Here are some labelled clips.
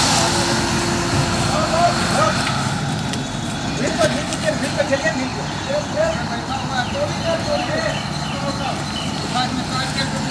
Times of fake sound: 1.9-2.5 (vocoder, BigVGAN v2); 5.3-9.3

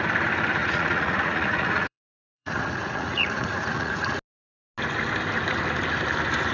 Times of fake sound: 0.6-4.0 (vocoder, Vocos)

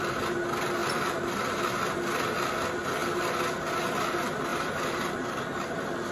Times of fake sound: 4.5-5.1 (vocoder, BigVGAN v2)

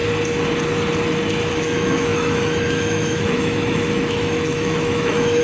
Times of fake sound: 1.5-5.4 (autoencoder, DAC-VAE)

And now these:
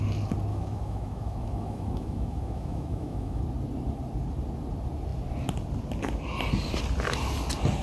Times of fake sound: 0.5-3.4 (autoencoder, DAC-VAE)

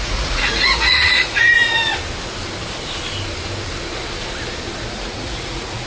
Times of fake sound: 0.0-1.9 (vocoder, Vocos); 4.9-5.9

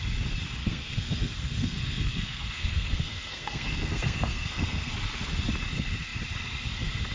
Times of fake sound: 0.6-4.9 (codec, SNAC)